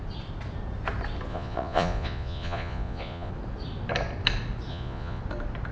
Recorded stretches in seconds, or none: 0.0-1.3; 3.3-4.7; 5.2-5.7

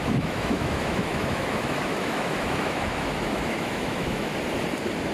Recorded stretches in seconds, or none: 4.3-5.1

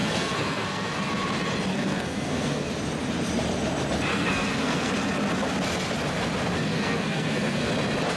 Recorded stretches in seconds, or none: 1.1-1.7; 2.7-4.1; 4.9-6.7; 7.7-8.2

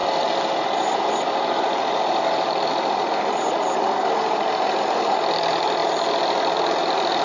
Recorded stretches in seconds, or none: 0.0-7.2

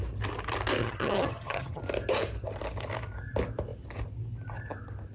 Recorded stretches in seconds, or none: 0.0-0.8; 1.8-5.1

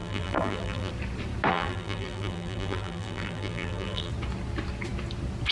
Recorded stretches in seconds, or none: 0.9-1.5; 4.1-5.5

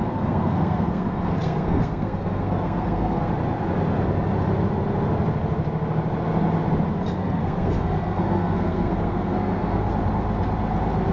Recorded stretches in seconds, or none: 3.3-7.2; 9.9-11.1